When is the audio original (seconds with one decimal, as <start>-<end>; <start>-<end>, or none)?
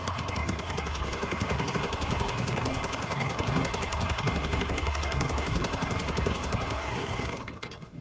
none